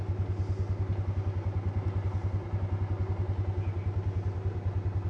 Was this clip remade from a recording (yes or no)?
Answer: no